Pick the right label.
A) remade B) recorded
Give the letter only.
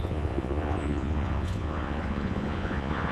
A